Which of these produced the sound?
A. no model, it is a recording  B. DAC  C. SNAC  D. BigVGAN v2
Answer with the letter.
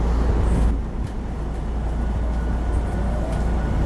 A